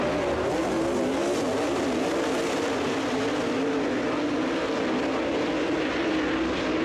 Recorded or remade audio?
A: recorded